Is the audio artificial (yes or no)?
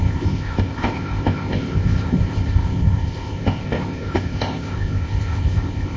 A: yes